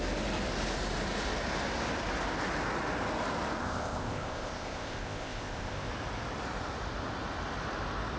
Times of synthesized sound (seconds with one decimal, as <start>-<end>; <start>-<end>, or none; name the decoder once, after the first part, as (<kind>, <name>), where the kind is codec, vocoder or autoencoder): 3.6-5.9 (codec, ZipCodec)